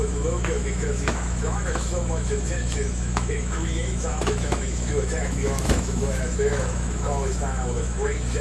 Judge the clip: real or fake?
fake